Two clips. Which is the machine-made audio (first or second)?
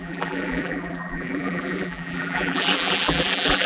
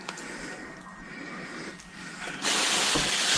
first